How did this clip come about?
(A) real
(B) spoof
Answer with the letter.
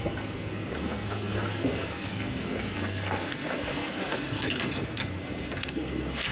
B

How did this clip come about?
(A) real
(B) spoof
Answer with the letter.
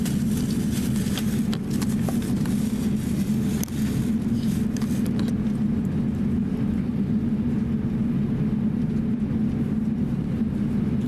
A